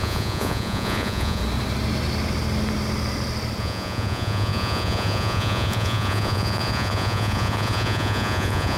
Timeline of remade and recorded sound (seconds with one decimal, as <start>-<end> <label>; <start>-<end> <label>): 0.0-1.4 remade; 1.4-3.6 recorded; 3.6-8.8 remade